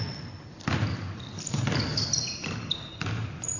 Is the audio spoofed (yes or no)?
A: no